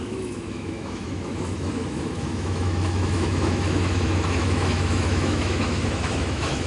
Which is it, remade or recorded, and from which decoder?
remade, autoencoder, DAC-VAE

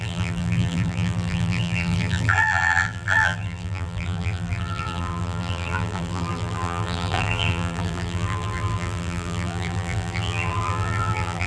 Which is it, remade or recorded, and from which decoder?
remade, vocoder, BigVGAN v2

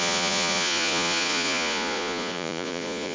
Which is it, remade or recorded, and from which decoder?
remade, vocoder, Vocos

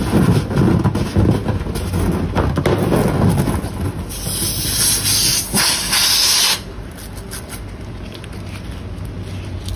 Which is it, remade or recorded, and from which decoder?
recorded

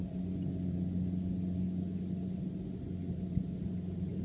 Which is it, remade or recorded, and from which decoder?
recorded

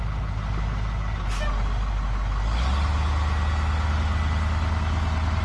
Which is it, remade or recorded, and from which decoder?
recorded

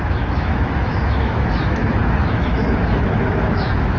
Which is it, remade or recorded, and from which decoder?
remade, autoencoder, DAC-VAE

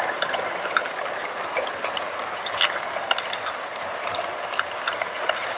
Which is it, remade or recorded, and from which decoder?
recorded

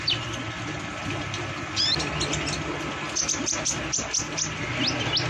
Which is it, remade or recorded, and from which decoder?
recorded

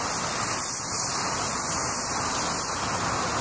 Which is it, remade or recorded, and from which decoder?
recorded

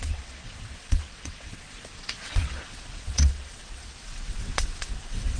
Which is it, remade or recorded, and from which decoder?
remade, vocoder, WaveNeXt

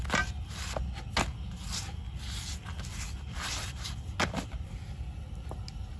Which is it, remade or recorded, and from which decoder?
recorded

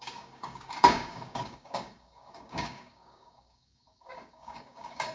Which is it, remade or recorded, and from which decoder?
remade, codec, DAC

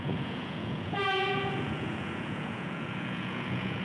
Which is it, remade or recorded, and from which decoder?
remade, vocoder, Vocos